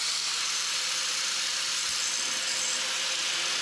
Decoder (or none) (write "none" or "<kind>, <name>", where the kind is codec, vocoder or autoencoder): vocoder, BigVGAN v2